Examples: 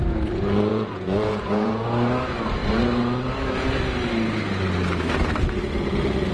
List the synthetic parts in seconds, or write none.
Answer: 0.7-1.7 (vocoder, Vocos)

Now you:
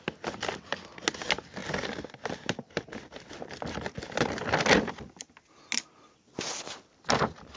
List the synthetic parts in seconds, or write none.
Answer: none

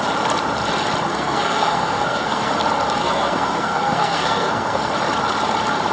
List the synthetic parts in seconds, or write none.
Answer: 1.1-2.5 (codec, SNAC); 3.0-4.9

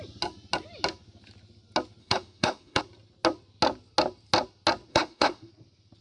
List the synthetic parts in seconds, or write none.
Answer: 2.0-2.8 (autoencoder, DAC-VAE); 4.9-5.5